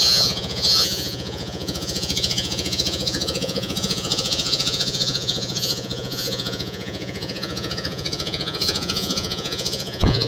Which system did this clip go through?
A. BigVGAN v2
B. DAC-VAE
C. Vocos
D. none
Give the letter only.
C